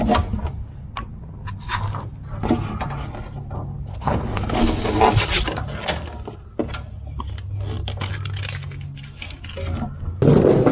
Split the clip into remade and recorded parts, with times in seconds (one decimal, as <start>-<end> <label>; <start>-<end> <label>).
0.0-3.9 recorded; 3.9-4.6 remade; 4.6-10.7 recorded